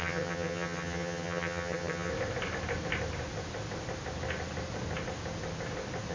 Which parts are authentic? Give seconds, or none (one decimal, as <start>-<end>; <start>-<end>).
2.1-6.1